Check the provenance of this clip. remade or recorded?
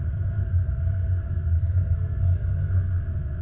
remade